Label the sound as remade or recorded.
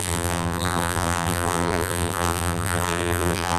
remade